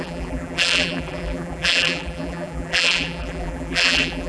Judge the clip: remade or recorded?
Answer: remade